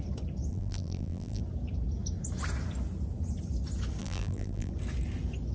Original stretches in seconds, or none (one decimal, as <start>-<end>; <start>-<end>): 0.0-0.5; 1.4-4.0; 4.7-5.5